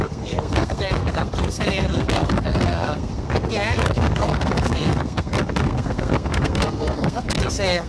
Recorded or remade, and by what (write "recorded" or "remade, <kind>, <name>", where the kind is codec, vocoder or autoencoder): remade, codec, SNAC